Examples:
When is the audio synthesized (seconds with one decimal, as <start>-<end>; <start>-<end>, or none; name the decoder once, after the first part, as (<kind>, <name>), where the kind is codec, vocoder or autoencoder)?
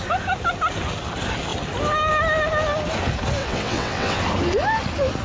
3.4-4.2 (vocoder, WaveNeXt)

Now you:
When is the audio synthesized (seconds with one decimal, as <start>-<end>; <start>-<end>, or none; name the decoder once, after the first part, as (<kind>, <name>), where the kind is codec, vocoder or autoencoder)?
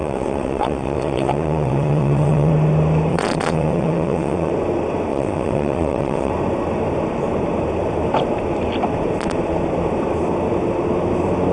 0.0-2.5 (vocoder, WaveNeXt); 3.1-4.5; 5.1-6.3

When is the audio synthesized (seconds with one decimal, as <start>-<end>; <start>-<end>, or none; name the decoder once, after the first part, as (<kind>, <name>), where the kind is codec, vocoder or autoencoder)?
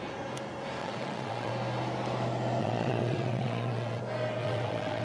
0.8-1.5 (vocoder, WaveNeXt); 2.6-4.0; 4.4-5.0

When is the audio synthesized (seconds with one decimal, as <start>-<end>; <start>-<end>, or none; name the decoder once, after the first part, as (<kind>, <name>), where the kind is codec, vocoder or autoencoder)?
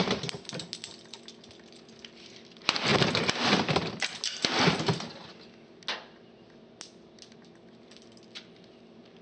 none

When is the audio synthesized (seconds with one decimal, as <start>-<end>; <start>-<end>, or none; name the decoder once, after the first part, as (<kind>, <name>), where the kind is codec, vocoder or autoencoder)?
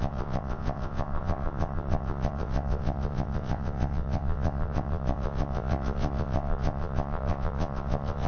0.0-8.3 (vocoder, WaveNeXt)